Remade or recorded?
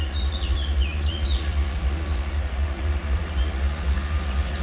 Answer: remade